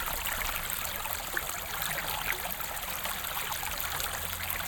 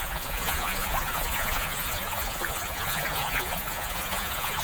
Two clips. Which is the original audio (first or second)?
first